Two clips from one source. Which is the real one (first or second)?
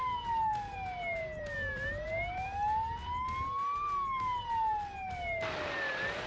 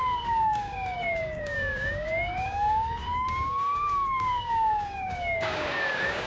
first